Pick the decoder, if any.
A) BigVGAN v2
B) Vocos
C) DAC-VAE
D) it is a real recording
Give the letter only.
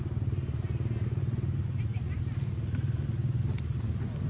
D